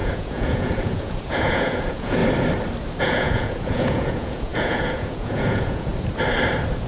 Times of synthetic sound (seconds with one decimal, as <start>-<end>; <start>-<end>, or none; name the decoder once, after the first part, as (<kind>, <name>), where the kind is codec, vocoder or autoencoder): 0.0-2.2 (vocoder, Vocos); 3.0-5.9